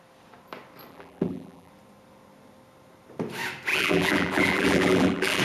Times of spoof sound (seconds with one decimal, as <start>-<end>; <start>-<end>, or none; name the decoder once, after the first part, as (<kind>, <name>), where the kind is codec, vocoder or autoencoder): 0.9-1.7 (vocoder, BigVGAN v2); 3.7-5.4